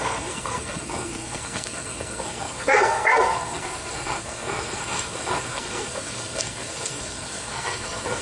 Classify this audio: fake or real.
fake